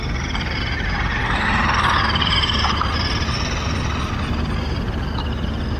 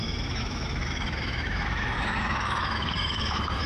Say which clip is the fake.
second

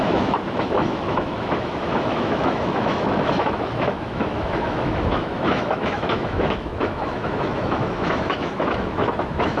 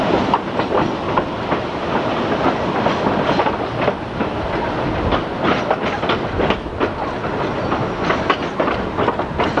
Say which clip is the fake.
first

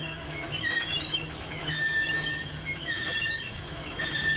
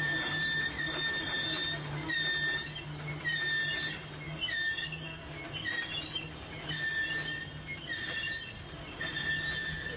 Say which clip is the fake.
first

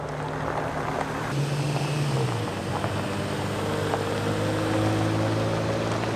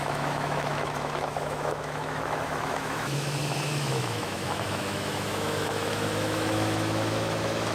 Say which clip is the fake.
second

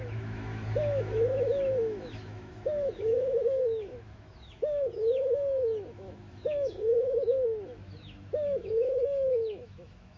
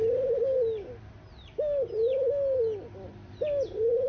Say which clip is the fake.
first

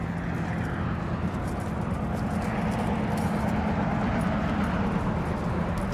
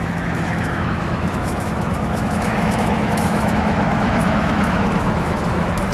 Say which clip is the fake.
second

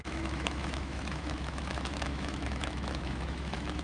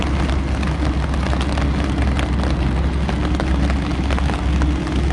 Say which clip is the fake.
first